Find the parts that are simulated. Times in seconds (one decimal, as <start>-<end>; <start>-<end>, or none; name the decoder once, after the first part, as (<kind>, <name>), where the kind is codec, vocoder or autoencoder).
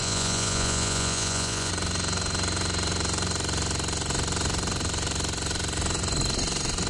0.0-1.7 (vocoder, Vocos)